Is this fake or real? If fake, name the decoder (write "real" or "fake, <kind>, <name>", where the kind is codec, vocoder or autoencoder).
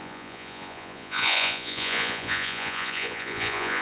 fake, vocoder, Vocos